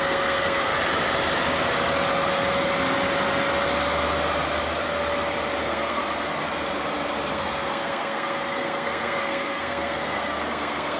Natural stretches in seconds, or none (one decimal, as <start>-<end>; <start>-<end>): 0.7-5.6; 6.0-7.3